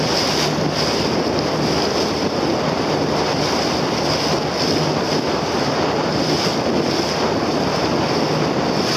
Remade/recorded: recorded